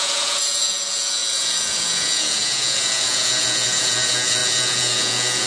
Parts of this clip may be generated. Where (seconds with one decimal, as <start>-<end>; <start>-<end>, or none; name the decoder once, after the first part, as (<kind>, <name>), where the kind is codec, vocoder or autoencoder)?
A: 0.0-5.5 (vocoder, Vocos)